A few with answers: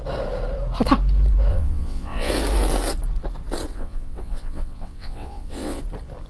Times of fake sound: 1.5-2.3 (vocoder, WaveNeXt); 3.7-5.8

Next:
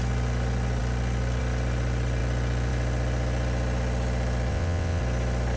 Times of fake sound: 4.5-5.0 (vocoder, WaveNeXt)

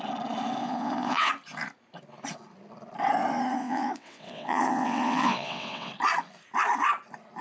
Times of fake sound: 0.6-1.3 (vocoder, WaveNeXt); 3.6-5.9